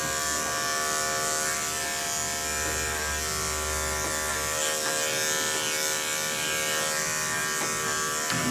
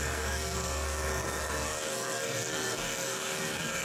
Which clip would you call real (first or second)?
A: first